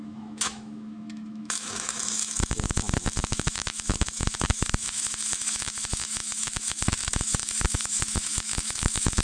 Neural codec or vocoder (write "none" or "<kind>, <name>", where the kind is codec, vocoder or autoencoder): autoencoder, DAC-VAE